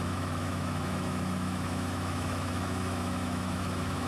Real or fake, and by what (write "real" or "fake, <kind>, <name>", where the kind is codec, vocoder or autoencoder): fake, autoencoder, DAC-VAE